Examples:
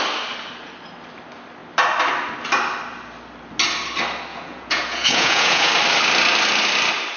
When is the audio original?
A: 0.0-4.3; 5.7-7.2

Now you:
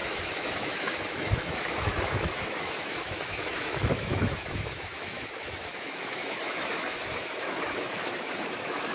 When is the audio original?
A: none